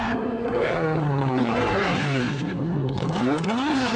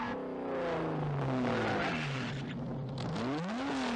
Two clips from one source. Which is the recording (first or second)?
second